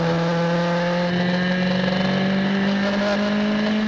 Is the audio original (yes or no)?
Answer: yes